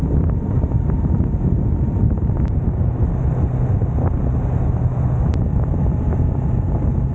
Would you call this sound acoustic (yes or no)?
yes